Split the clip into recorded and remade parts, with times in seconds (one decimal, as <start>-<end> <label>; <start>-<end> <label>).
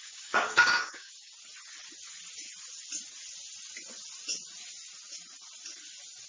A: 0.0-1.3 remade; 1.3-6.3 recorded